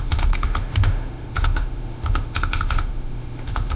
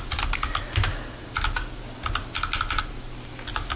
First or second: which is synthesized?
first